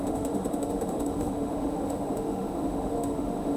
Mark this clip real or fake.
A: fake